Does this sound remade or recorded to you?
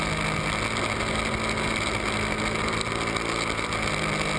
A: recorded